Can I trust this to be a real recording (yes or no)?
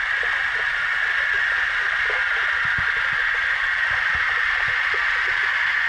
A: yes